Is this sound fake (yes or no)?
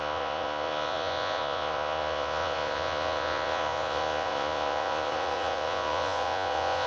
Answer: yes